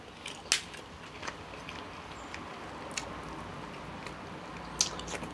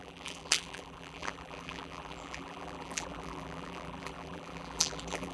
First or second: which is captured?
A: first